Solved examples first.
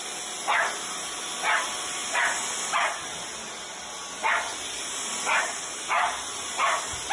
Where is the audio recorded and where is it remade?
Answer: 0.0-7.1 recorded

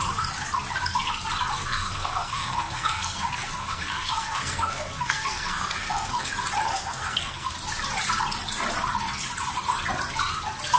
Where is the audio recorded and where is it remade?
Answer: 0.0-1.6 recorded; 1.6-6.3 remade; 6.3-6.7 recorded; 6.7-7.5 remade; 7.5-10.8 recorded

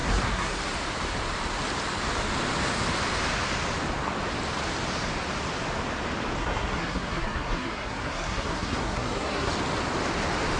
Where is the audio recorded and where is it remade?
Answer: 0.0-0.6 remade; 0.6-6.4 recorded; 6.4-9.5 remade; 9.5-10.6 recorded

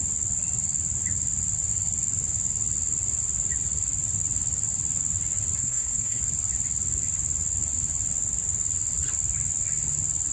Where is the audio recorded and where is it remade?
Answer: 0.0-5.6 recorded; 5.6-6.2 remade; 6.2-10.3 recorded

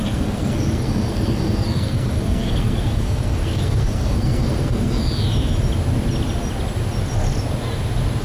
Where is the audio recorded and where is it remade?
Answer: 0.0-5.0 remade; 5.0-8.2 recorded

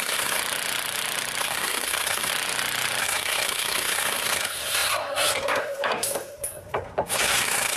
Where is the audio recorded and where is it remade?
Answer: 0.0-0.4 remade; 0.4-1.4 recorded; 1.4-2.3 remade; 2.3-3.0 recorded; 3.0-7.8 remade

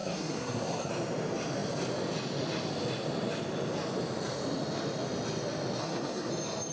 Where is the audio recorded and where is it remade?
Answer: 0.0-0.9 remade; 0.9-5.8 recorded; 5.8-6.3 remade; 6.3-6.7 recorded

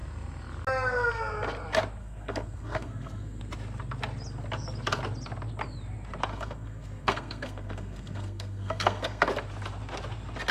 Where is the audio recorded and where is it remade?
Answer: 0.0-2.0 recorded; 2.0-3.4 remade; 3.4-6.3 recorded; 6.3-9.2 remade; 9.2-10.5 recorded